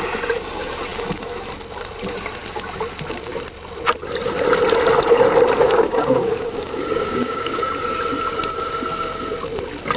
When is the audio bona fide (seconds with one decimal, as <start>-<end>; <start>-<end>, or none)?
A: 0.0-5.6; 7.6-10.0